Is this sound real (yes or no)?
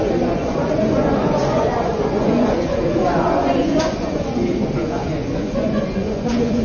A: no